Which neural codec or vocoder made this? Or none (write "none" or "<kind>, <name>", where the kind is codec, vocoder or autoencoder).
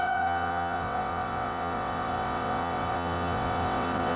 vocoder, WaveNeXt